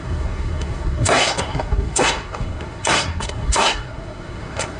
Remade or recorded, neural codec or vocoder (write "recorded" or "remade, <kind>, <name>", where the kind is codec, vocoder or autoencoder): remade, codec, SNAC